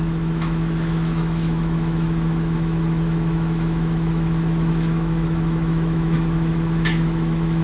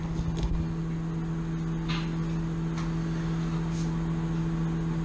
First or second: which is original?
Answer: second